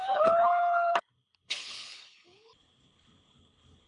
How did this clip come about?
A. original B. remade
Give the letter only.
B